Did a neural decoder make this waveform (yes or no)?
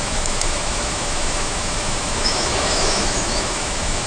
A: yes